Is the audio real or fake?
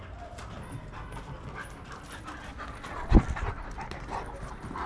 real